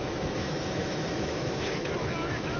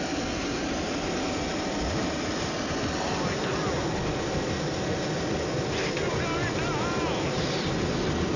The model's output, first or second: first